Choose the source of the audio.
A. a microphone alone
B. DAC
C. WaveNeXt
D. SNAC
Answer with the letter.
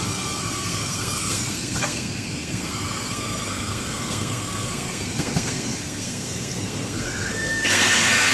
D